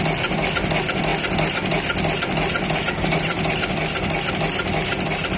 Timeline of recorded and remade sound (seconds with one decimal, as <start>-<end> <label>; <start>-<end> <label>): 0.0-5.4 recorded

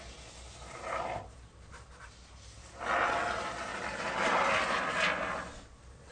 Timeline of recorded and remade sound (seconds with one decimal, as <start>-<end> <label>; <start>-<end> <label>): 0.0-6.1 recorded

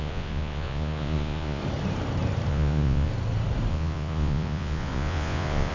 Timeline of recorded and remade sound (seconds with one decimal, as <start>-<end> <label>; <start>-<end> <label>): 0.0-1.6 remade; 1.6-2.5 recorded; 2.5-3.1 remade; 3.1-3.7 recorded; 3.7-5.7 remade